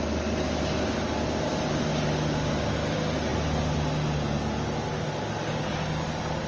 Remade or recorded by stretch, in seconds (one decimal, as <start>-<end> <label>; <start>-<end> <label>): 0.0-6.5 recorded